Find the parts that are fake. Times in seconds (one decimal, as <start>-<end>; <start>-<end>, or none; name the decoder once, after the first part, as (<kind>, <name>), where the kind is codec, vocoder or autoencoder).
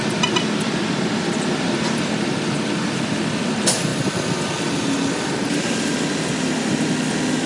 none